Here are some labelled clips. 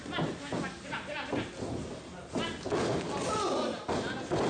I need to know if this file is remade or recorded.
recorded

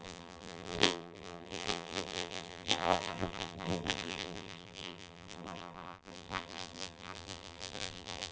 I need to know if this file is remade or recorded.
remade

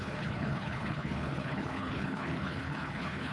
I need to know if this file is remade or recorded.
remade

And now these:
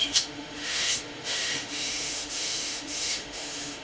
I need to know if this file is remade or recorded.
remade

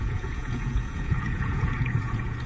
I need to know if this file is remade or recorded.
remade